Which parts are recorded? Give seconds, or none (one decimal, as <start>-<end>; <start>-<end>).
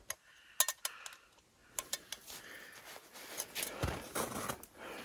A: 0.0-5.0